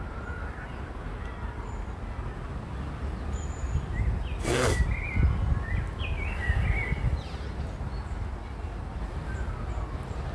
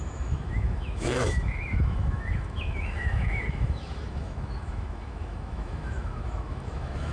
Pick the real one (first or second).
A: first